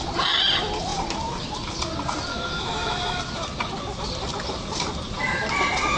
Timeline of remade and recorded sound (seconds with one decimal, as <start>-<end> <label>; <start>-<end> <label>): 0.0-2.3 recorded; 2.3-3.2 remade; 3.2-6.0 recorded